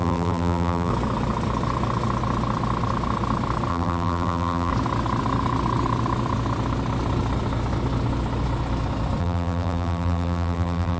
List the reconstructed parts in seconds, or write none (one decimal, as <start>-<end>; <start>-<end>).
0.0-0.9; 3.7-4.7; 9.2-11.0